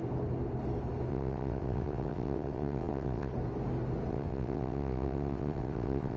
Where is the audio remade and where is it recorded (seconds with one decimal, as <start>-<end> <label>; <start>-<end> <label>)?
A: 0.0-1.1 recorded; 1.1-3.3 remade; 3.3-4.1 recorded; 4.1-6.2 remade